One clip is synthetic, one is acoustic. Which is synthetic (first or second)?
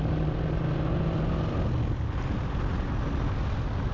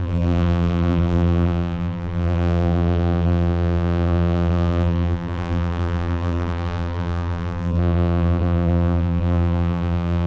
second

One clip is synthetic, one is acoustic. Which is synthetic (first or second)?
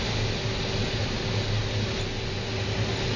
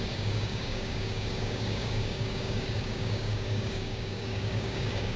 second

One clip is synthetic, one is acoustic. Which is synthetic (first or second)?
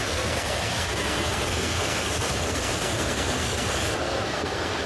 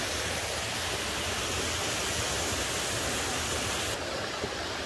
first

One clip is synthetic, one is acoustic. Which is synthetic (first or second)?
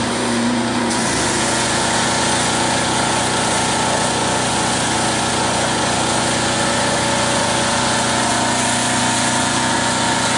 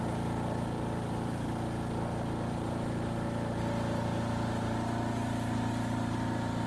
first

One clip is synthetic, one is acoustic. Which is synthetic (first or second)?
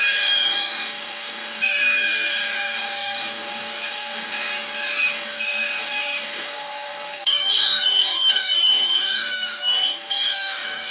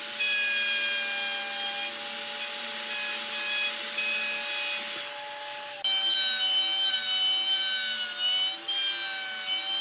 first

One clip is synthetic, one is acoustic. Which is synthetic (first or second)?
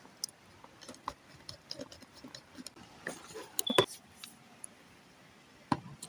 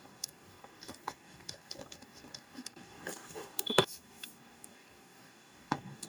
second